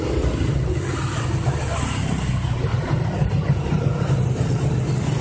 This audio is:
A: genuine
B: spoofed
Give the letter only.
A